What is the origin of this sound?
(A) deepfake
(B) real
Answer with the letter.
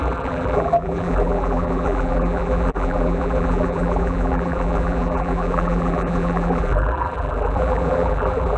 A